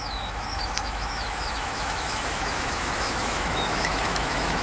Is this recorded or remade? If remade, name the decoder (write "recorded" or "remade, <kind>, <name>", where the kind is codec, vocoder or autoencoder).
remade, autoencoder, DAC-VAE